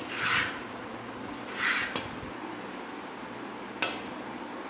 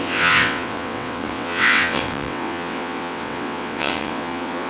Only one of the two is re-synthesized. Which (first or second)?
second